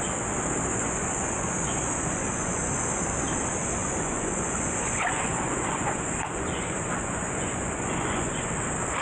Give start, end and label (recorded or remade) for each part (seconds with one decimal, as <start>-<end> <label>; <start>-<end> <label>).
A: 0.0-0.7 recorded; 0.7-3.0 remade; 3.0-3.8 recorded; 3.8-8.5 remade; 8.5-9.0 recorded